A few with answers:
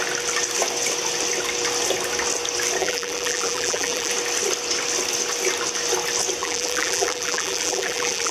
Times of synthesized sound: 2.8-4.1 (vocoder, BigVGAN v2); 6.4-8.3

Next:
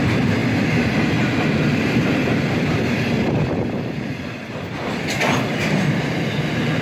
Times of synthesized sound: 0.0-0.4 (vocoder, BigVGAN v2); 1.8-6.8